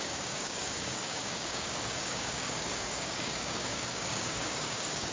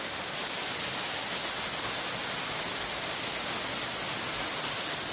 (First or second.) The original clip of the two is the second